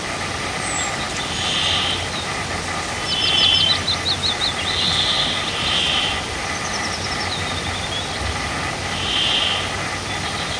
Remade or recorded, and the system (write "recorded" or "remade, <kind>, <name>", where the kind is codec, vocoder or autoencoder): recorded